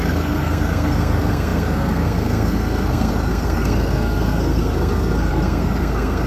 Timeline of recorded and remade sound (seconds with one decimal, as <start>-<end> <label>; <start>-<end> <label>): 0.0-6.3 remade